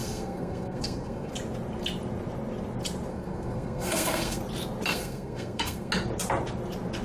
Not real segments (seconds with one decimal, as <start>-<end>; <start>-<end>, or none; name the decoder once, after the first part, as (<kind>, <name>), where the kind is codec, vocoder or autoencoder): 0.0-1.3 (codec, SNAC); 3.1-4.4; 4.9-5.9